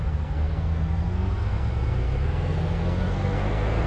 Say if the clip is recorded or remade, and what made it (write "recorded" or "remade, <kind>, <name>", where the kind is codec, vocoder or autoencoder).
remade, codec, SNAC